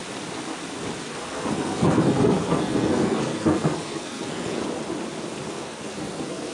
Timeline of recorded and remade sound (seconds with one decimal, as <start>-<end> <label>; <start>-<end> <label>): 0.0-1.2 recorded; 1.2-4.6 remade; 4.6-5.5 recorded; 5.5-6.5 remade